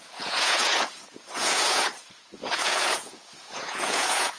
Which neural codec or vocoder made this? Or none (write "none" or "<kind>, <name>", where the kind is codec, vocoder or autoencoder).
vocoder, Vocos